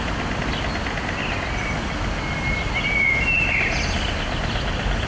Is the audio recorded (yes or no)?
yes